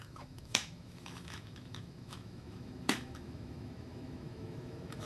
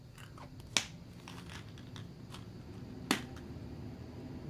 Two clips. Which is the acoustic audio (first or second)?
second